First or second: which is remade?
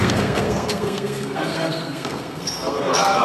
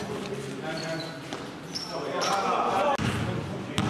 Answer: first